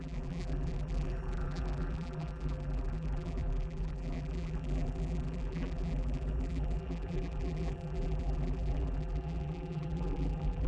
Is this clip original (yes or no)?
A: no